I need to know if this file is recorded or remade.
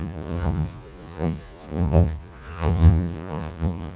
remade